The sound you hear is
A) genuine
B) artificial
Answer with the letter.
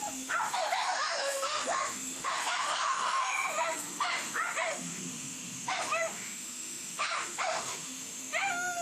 B